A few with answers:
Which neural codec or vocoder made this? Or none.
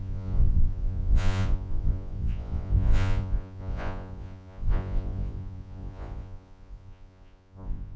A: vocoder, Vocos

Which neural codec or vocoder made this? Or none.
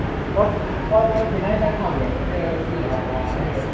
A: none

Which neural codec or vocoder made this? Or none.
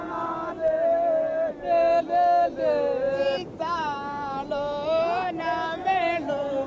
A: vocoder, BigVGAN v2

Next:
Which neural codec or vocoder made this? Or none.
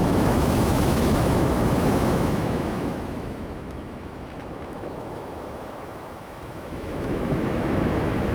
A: autoencoder, DAC-VAE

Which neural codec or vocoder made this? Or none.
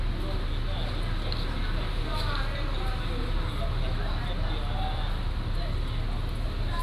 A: none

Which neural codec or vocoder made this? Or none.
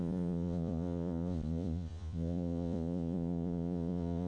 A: vocoder, Vocos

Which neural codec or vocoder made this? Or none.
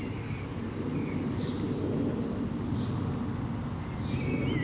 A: none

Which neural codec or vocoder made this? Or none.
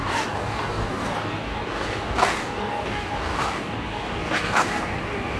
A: codec, DAC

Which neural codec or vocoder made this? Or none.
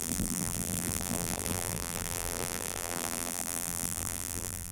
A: vocoder, BigVGAN v2